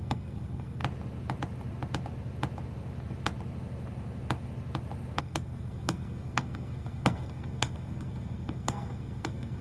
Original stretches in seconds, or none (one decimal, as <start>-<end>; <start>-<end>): 0.8-5.2